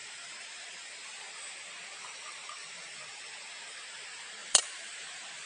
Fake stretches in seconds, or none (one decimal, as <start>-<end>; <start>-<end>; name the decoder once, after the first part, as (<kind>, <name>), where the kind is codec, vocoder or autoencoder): 0.0-1.3 (vocoder, BigVGAN v2); 2.6-3.2; 4.4-5.5

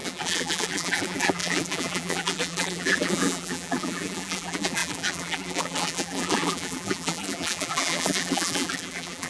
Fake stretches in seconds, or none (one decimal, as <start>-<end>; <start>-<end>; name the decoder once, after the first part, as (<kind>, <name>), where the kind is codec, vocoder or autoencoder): 0.0-9.3 (vocoder, BigVGAN v2)